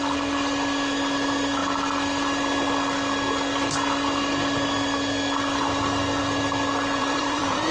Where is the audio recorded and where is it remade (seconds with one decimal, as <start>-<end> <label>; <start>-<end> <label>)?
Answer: 0.0-7.0 recorded; 7.0-7.7 remade